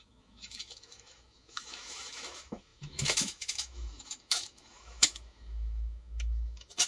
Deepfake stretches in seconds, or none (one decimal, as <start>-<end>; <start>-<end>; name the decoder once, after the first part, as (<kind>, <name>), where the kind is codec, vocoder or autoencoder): 0.0-6.9 (autoencoder, DAC-VAE)